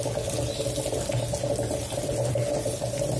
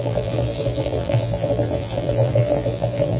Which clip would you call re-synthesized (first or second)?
second